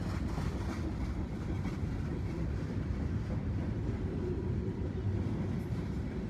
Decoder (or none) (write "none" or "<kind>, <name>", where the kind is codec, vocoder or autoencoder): none